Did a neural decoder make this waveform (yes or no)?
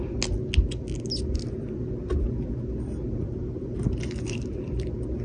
no